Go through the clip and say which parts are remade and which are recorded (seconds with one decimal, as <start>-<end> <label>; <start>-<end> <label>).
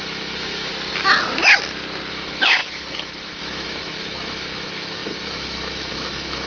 0.0-0.7 remade; 0.7-2.1 recorded; 2.1-6.5 remade